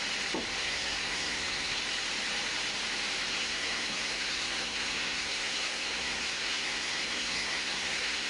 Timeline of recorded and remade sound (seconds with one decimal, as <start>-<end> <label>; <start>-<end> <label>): 0.0-0.6 recorded; 0.6-1.8 remade; 1.8-3.3 recorded; 3.3-8.3 remade